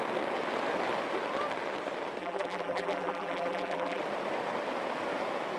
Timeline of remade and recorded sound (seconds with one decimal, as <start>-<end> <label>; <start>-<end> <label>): 0.0-2.2 recorded; 2.2-4.0 remade; 4.0-5.6 recorded